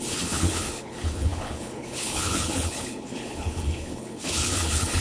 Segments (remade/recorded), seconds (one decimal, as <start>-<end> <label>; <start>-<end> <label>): 0.0-5.0 remade

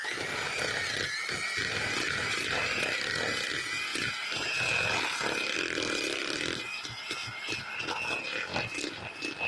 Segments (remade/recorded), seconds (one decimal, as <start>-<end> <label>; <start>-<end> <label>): 0.0-3.1 remade; 3.1-7.2 recorded; 7.2-7.8 remade; 7.8-8.5 recorded; 8.5-9.1 remade; 9.1-9.5 recorded

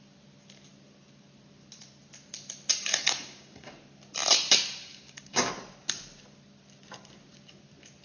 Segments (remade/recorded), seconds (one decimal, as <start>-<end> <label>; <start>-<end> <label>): 0.0-2.9 recorded; 2.9-3.7 remade; 3.7-4.9 recorded; 4.9-5.5 remade; 5.5-8.0 recorded

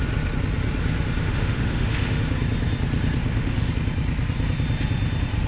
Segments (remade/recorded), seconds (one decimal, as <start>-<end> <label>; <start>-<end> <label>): 0.0-1.2 recorded; 1.2-2.2 remade; 2.2-3.2 recorded; 3.2-3.7 remade; 3.7-5.5 recorded

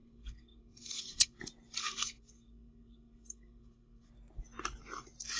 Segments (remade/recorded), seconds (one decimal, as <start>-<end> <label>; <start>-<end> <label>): 0.0-1.4 remade; 1.4-1.8 recorded; 1.8-4.1 remade; 4.1-5.4 recorded

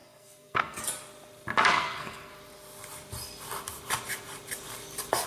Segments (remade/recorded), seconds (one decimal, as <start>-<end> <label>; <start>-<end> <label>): 0.0-0.8 remade; 0.8-1.7 recorded; 1.7-2.3 remade; 2.3-5.3 recorded

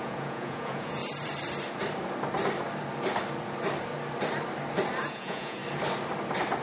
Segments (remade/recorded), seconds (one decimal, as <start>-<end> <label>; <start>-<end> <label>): 0.0-1.0 remade; 1.0-5.0 recorded; 5.0-5.6 remade; 5.6-6.6 recorded

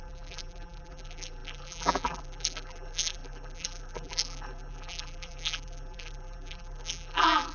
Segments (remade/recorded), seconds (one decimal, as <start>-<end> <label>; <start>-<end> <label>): 0.0-7.5 remade